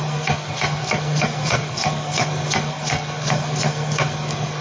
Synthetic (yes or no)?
yes